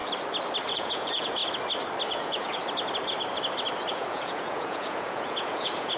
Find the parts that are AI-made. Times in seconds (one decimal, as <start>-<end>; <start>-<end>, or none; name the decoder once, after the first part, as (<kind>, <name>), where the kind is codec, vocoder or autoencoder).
0.7-1.4 (vocoder, Vocos); 2.1-2.6; 3.9-6.0